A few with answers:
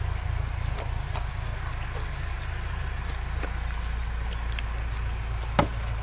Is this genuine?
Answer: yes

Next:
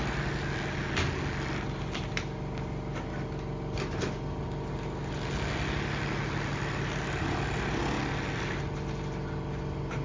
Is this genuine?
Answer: yes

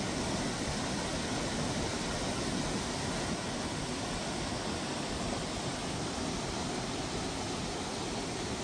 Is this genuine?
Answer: yes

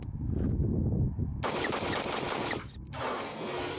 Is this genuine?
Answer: yes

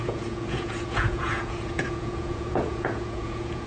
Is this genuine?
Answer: no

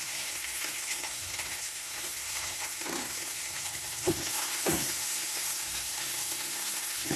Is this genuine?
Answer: no